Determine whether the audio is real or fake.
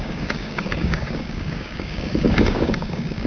fake